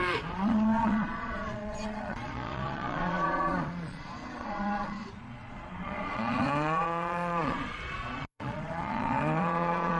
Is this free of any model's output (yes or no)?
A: no